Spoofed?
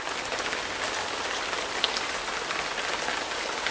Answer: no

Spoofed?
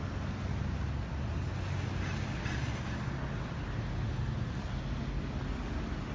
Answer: no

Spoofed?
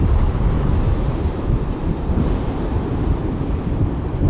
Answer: no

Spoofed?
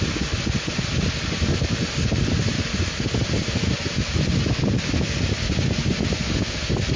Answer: no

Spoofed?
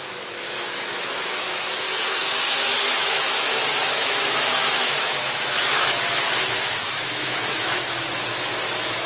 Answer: yes